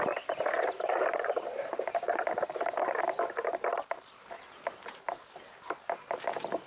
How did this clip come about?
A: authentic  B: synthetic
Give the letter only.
B